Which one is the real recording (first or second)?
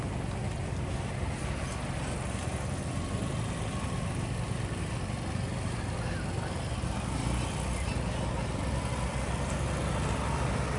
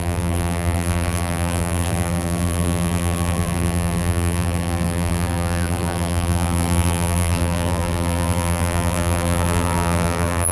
first